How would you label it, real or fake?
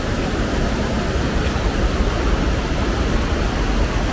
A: real